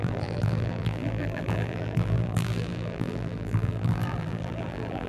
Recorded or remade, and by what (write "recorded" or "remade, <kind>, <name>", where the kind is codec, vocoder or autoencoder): remade, vocoder, BigVGAN v2